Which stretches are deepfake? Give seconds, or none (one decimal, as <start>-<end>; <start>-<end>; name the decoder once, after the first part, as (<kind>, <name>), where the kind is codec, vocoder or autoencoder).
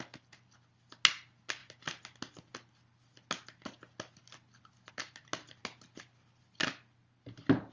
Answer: none